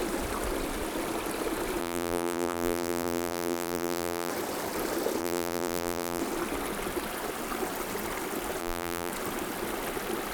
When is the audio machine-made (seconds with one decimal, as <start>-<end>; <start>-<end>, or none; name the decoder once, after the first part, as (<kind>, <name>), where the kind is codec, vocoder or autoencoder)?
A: 1.8-4.3 (vocoder, BigVGAN v2); 5.2-6.2; 8.6-9.1